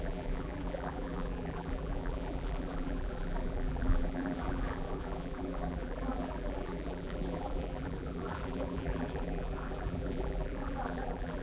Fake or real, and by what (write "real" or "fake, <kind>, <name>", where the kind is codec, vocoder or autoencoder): fake, vocoder, BigVGAN v2